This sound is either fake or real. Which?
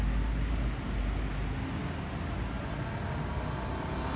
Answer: real